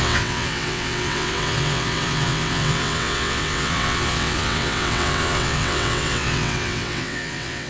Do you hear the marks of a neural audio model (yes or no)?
yes